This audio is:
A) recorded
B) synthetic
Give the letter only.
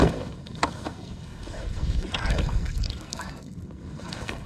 B